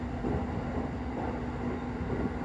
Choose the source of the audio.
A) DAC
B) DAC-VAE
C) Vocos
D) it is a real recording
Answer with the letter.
D